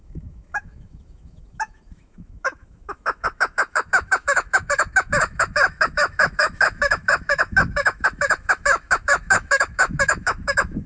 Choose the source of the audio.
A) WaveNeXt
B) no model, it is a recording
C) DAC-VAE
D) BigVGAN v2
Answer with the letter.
C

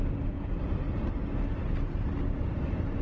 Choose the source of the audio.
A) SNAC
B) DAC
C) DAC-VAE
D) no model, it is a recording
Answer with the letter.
D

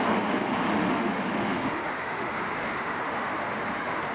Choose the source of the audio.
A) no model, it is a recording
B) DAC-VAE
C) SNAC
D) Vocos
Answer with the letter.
B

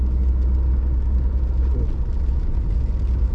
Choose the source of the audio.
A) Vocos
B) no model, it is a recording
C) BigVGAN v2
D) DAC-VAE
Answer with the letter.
B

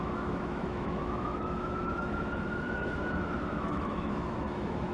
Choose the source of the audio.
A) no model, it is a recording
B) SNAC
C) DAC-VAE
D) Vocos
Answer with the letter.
C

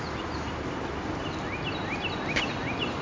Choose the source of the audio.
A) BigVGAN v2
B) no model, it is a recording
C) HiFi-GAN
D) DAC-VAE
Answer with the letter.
B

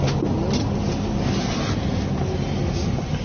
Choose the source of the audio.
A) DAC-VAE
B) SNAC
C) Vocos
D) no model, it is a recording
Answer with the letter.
D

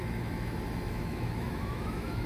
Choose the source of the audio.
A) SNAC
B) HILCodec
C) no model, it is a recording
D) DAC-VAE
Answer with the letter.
D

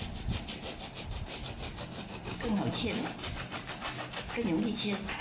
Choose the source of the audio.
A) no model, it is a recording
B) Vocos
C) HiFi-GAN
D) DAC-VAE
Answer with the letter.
A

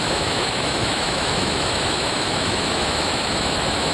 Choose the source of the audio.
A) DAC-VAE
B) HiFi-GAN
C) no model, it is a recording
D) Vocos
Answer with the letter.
A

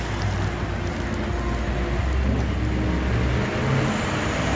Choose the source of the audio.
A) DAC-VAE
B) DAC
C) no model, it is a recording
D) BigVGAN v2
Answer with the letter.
C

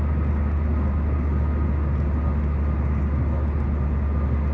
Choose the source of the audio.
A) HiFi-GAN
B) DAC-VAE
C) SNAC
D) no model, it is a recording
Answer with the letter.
D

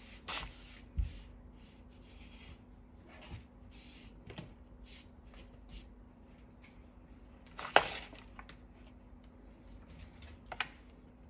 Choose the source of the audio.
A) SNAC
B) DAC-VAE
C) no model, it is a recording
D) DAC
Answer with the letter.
C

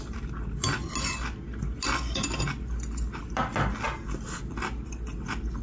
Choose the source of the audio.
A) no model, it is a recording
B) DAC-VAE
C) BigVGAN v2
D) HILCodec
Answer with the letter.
A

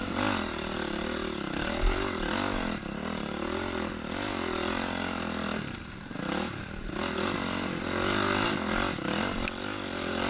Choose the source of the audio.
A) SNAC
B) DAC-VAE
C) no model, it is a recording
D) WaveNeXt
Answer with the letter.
C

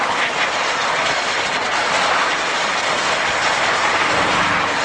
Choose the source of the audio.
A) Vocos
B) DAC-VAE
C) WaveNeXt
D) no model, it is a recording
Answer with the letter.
D